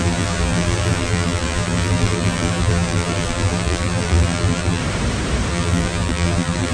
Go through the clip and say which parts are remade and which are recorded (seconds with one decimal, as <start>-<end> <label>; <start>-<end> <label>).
0.0-4.8 remade; 4.8-5.5 recorded; 5.5-6.7 remade